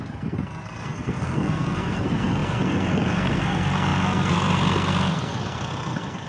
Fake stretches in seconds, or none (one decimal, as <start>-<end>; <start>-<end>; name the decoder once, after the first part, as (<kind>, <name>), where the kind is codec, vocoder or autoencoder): 0.0-6.3 (codec, SNAC)